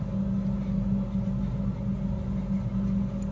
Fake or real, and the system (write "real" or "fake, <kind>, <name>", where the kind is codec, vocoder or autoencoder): real